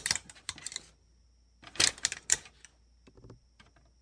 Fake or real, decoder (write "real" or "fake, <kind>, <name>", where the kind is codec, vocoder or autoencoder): real